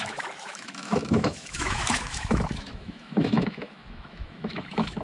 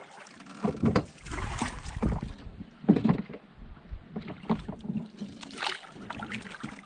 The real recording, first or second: second